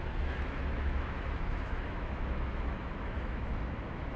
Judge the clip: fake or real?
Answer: fake